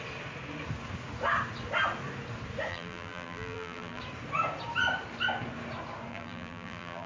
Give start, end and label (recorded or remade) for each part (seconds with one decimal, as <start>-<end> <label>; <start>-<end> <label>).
0.0-2.7 recorded; 2.7-4.0 remade; 4.0-6.1 recorded; 6.1-7.1 remade

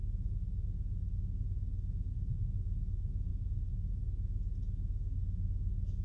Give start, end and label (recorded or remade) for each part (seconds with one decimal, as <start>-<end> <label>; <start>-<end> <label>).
0.0-6.0 recorded

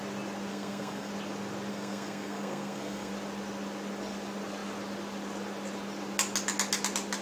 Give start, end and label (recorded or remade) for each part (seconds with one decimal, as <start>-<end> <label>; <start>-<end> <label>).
0.0-0.5 recorded; 0.5-1.1 remade; 1.1-1.7 recorded; 1.7-3.1 remade; 3.1-7.2 recorded

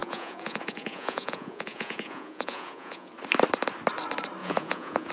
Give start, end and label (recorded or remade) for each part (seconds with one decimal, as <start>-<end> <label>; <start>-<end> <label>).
0.0-3.1 remade; 3.1-4.4 recorded; 4.4-5.1 remade

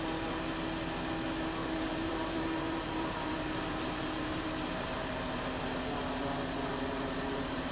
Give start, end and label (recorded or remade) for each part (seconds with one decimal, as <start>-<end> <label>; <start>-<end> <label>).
0.0-1.6 recorded; 1.6-5.4 remade; 5.4-6.7 recorded; 6.7-7.7 remade

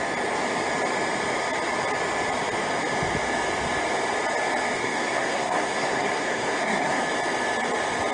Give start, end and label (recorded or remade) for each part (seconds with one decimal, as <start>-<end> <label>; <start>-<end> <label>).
0.0-4.8 recorded; 4.8-7.0 remade; 7.0-8.1 recorded